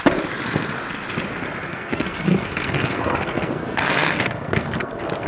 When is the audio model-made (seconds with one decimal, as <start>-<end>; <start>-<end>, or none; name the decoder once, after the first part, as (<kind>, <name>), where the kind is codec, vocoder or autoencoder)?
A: 1.7-5.3 (codec, SNAC)